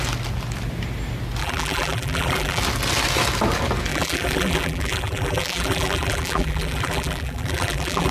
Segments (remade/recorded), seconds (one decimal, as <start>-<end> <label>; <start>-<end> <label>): 0.0-1.4 recorded; 1.4-2.6 remade; 2.6-3.9 recorded; 3.9-8.1 remade